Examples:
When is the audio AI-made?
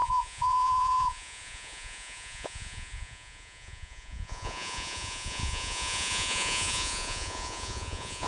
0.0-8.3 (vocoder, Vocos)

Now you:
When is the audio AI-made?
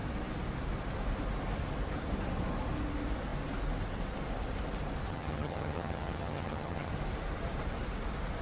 5.1-6.9 (vocoder, HiFi-GAN)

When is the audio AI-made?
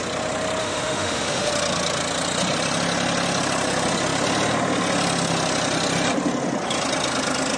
0.6-1.5 (autoencoder, DAC-VAE)